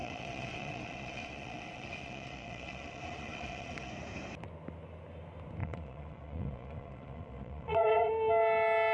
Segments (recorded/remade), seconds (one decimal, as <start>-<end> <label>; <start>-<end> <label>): 0.0-3.9 remade; 3.9-5.6 recorded; 5.6-8.1 remade; 8.1-8.9 recorded